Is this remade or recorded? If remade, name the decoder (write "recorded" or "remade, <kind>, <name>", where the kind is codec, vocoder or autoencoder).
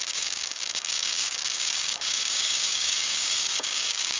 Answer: remade, codec, DAC